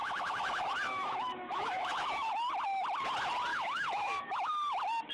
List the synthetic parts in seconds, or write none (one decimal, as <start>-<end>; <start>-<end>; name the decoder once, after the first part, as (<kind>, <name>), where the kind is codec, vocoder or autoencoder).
0.0-2.3 (autoencoder, DAC-VAE); 3.5-4.5